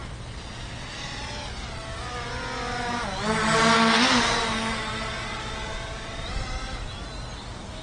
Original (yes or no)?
yes